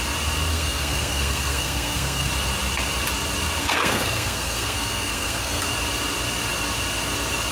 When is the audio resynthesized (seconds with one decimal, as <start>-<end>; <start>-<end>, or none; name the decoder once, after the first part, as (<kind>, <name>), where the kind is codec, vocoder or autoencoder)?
0.5-2.3 (codec, SNAC); 3.6-5.6